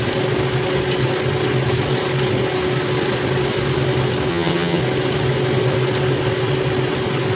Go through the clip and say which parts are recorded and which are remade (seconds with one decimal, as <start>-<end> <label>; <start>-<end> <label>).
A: 0.0-4.3 recorded; 4.3-4.8 remade; 4.8-7.4 recorded